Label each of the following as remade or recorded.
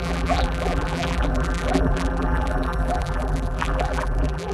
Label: remade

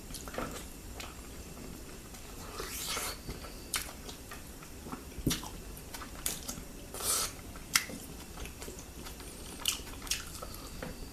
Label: remade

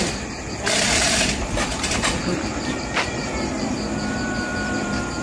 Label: remade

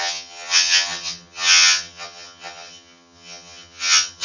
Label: remade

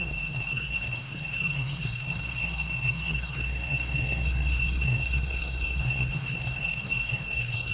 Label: remade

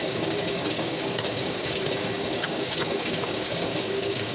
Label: remade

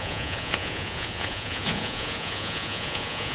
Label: remade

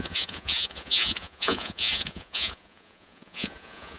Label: remade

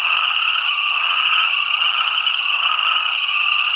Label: remade